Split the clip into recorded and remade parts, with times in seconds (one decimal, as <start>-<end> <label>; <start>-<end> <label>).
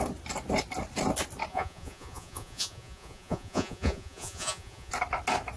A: 0.0-1.5 recorded; 1.5-4.9 remade; 4.9-5.6 recorded